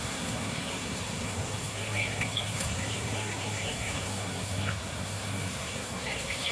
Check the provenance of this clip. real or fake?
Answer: fake